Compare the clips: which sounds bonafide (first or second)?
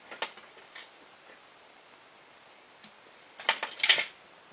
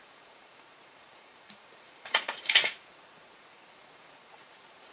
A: first